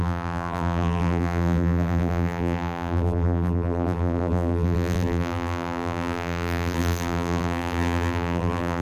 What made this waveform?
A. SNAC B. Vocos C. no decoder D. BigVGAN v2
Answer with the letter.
D